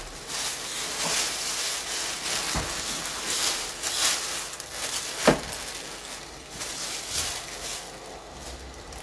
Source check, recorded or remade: recorded